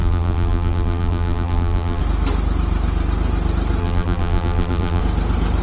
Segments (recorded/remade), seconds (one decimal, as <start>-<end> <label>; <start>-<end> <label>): 0.0-2.0 remade; 2.0-3.8 recorded; 3.8-5.0 remade; 5.0-5.6 recorded